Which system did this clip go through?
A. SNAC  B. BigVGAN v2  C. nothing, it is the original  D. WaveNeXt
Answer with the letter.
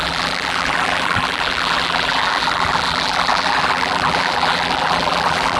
B